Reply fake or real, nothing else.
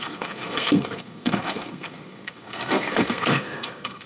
fake